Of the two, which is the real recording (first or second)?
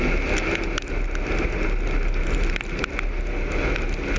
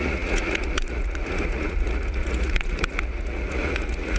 first